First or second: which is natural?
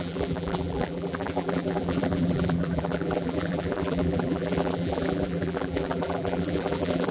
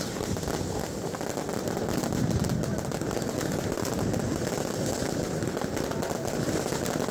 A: second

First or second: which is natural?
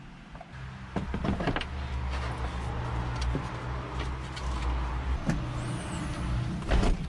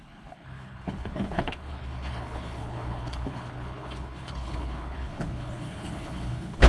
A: first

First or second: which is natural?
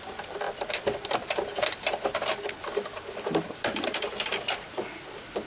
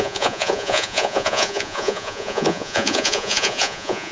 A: first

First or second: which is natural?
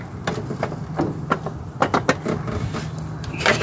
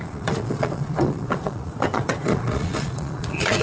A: first